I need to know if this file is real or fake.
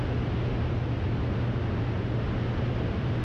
real